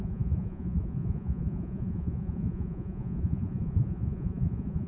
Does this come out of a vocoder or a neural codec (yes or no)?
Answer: yes